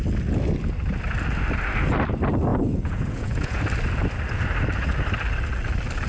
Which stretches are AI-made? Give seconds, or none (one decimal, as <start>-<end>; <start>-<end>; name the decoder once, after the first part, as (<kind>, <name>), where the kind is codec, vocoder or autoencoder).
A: 2.5-3.6 (vocoder, Vocos)